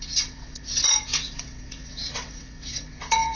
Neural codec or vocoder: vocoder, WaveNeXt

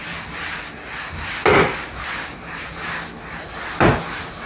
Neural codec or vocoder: none